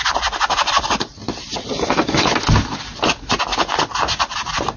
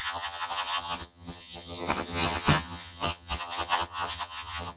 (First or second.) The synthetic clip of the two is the second